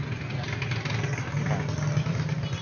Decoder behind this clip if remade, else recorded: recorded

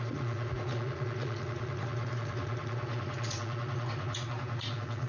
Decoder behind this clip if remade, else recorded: remade, vocoder, Vocos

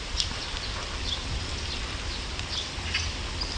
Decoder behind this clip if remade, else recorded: recorded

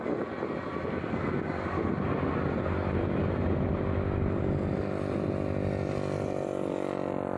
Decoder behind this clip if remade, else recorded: recorded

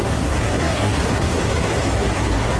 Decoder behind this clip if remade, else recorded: remade, codec, SNAC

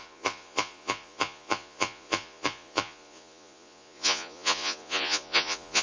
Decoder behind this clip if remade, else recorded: remade, vocoder, Vocos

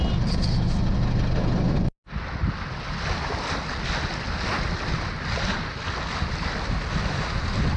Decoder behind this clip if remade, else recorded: recorded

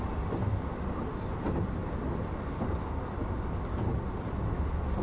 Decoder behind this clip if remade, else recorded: recorded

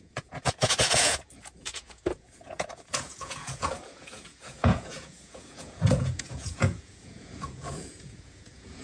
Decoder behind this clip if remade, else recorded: remade, vocoder, Vocos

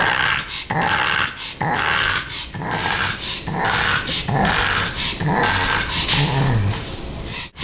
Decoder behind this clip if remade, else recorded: recorded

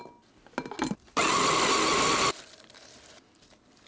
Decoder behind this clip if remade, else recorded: recorded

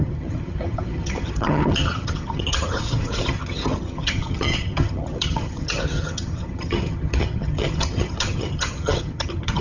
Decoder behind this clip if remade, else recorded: remade, vocoder, HiFi-GAN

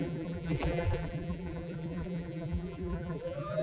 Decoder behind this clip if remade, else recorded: remade, vocoder, BigVGAN v2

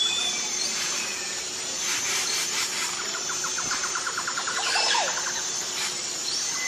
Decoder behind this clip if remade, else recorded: remade, vocoder, BigVGAN v2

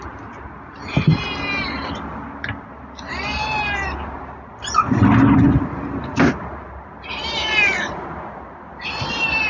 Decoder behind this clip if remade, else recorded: recorded